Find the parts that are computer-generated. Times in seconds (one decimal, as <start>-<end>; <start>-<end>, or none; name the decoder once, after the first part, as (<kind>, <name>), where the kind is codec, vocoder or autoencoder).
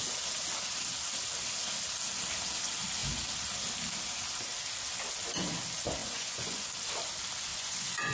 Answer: 6.0-6.7 (vocoder, Vocos); 7.5-8.1